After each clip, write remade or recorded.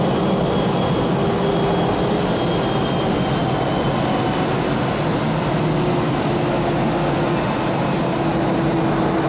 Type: recorded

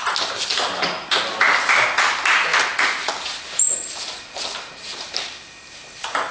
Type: recorded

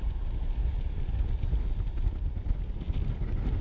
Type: recorded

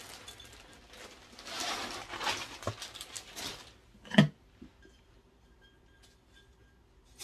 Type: recorded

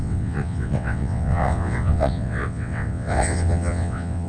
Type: remade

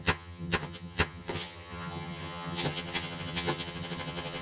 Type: remade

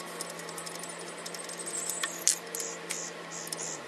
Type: recorded